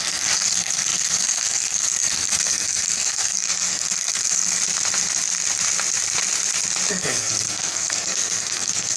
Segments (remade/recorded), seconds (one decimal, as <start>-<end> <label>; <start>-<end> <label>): 0.0-4.6 remade; 4.6-6.9 recorded; 6.9-9.0 remade